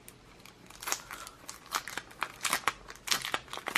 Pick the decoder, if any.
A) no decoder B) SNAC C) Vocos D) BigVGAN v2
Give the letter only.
A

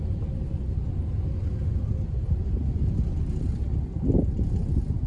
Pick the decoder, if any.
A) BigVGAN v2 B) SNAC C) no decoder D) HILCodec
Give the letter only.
C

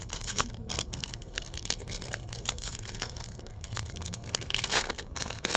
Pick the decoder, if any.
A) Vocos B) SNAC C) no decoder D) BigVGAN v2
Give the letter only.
B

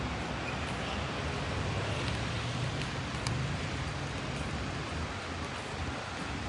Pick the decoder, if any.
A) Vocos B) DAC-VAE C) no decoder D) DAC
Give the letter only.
C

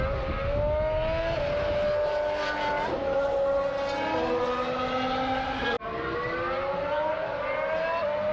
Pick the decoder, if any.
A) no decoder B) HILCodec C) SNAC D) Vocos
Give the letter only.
A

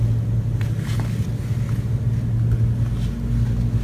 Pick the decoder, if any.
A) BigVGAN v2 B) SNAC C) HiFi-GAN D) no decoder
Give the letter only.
D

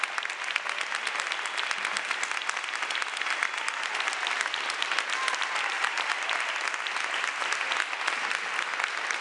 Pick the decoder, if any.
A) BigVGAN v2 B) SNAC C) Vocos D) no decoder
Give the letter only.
D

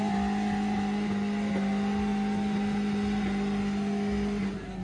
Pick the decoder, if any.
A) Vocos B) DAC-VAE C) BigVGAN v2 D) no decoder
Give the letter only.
D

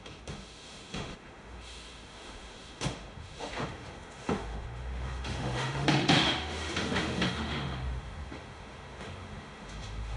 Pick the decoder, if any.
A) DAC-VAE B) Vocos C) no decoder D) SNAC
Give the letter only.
A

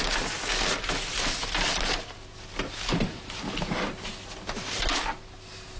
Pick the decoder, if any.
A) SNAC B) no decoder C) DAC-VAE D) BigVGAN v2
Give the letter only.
B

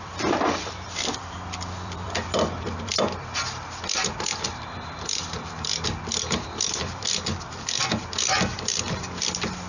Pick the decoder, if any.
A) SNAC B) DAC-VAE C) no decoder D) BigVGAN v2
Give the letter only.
D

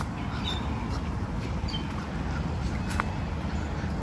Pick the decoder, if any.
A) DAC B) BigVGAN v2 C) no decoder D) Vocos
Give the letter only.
C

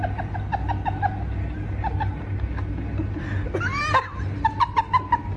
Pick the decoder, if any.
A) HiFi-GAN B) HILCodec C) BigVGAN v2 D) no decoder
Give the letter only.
D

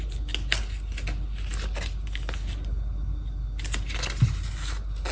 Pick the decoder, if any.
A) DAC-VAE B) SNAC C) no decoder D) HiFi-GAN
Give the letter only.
C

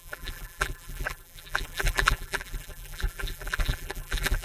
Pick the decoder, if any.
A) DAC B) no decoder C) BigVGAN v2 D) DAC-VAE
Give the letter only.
C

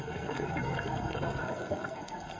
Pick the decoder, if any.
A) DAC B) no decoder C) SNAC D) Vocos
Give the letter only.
C